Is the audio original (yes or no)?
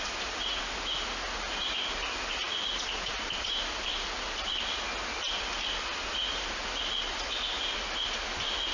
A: yes